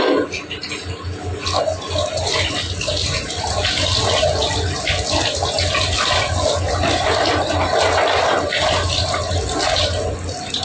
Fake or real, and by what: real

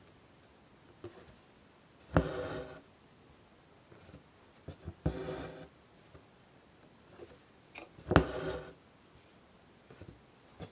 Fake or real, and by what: real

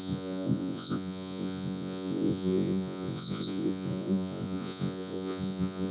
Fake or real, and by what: fake, vocoder, Vocos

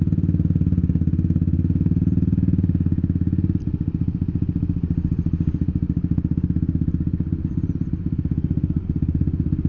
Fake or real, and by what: real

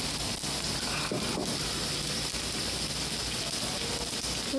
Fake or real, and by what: real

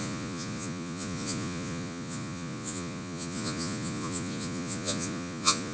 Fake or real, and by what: fake, vocoder, Vocos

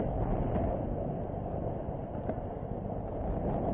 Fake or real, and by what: real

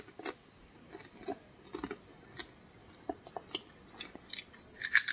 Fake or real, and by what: real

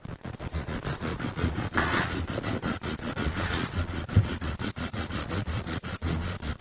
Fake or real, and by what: fake, vocoder, Vocos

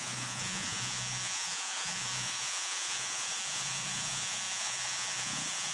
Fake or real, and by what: fake, vocoder, Vocos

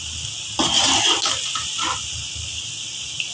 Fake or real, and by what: real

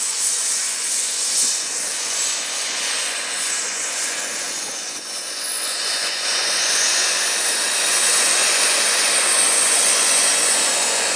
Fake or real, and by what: fake, vocoder, Vocos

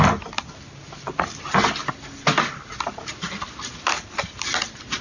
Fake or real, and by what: real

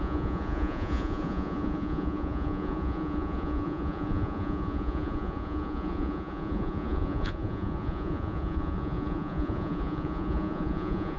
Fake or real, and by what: fake, vocoder, Vocos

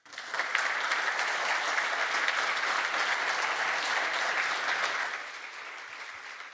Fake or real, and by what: real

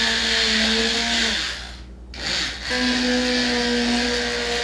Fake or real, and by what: real